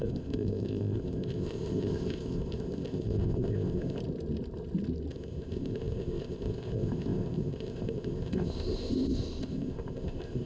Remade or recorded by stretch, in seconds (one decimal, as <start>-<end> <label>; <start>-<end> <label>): 0.0-4.0 remade; 4.0-5.1 recorded; 5.1-10.5 remade